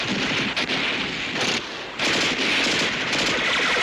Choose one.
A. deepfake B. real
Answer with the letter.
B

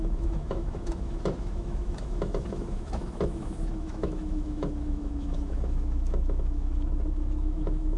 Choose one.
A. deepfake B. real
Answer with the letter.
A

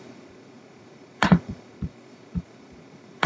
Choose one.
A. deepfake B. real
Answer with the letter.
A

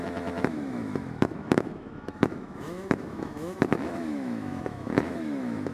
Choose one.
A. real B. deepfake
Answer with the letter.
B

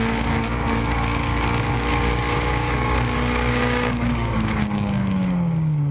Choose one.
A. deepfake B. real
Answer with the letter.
A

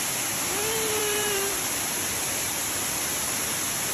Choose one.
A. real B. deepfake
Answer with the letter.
B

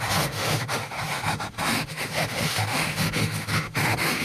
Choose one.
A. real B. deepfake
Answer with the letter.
B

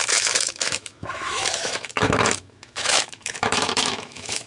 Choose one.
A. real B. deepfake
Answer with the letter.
B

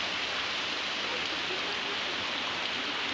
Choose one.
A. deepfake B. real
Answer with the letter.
B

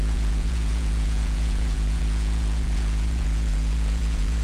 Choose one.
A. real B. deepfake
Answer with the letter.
B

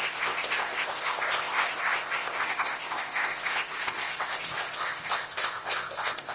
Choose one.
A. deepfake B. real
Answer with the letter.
A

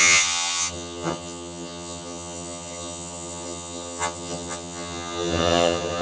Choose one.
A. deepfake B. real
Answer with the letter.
A